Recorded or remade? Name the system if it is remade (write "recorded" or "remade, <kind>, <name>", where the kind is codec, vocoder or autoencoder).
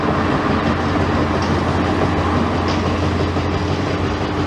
recorded